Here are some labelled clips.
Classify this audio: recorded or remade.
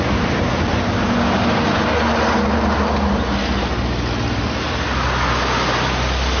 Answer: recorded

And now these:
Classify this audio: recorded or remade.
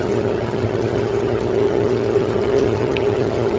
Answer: remade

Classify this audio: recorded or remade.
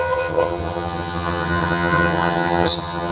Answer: remade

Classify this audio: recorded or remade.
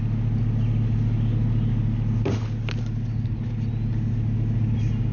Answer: recorded